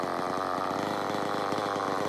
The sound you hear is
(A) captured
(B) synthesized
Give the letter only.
A